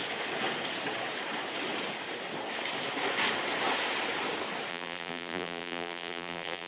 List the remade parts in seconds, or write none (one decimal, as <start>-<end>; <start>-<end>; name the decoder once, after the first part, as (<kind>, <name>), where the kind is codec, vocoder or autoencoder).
4.7-6.7 (vocoder, BigVGAN v2)